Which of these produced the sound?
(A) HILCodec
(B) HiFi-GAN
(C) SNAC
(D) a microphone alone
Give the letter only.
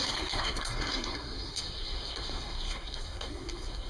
C